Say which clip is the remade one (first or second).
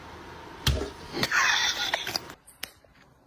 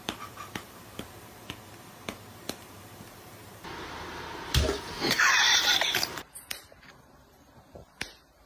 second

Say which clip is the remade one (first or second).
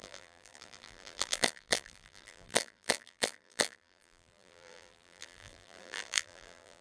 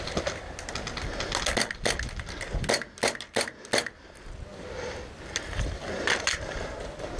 first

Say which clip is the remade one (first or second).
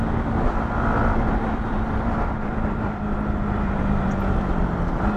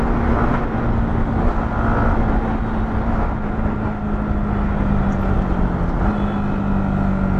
first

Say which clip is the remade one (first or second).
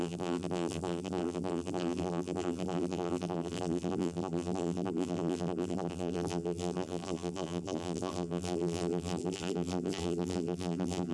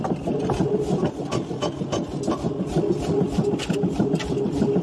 first